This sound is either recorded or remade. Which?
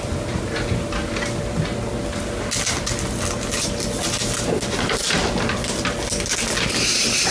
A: recorded